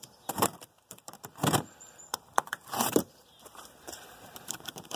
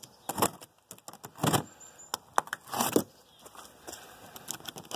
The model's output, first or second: first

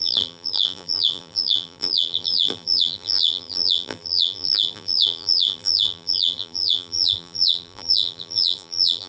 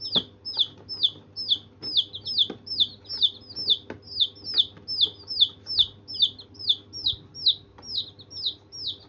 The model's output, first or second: first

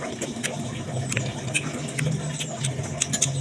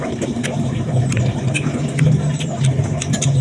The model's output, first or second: second